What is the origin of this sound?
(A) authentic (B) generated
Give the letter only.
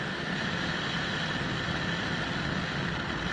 A